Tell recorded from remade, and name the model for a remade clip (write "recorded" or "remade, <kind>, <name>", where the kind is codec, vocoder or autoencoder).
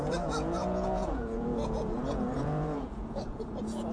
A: remade, vocoder, Vocos